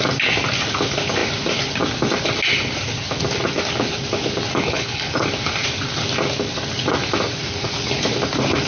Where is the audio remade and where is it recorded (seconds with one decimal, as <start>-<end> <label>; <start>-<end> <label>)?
0.0-4.5 recorded; 4.5-5.1 remade; 5.1-8.7 recorded

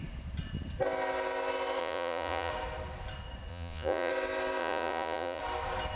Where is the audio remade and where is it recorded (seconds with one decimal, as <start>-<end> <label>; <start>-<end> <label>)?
0.0-1.8 recorded; 1.8-2.5 remade; 2.5-3.5 recorded; 3.5-4.1 remade; 4.1-4.6 recorded; 4.6-5.4 remade; 5.4-6.0 recorded